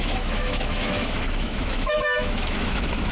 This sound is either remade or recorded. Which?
remade